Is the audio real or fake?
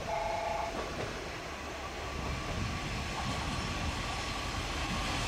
real